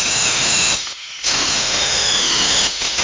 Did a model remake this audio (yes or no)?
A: yes